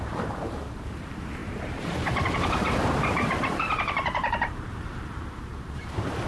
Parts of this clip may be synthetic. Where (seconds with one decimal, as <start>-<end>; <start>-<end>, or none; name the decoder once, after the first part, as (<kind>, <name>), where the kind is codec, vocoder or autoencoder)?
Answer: 0.0-6.3 (vocoder, BigVGAN v2)